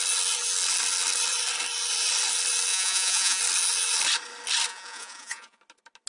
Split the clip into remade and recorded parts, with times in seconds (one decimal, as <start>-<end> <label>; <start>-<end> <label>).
0.0-2.7 recorded; 2.7-3.4 remade; 3.4-4.7 recorded; 4.7-5.6 remade; 5.6-6.1 recorded